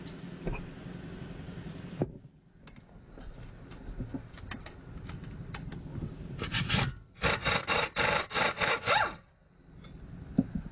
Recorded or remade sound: recorded